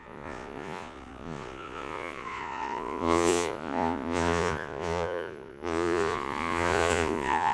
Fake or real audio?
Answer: fake